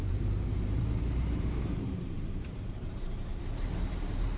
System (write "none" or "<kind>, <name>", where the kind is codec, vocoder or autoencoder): vocoder, BigVGAN v2